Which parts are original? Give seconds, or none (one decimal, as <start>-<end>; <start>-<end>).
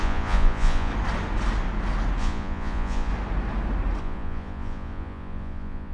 0.9-2.2; 3.1-4.0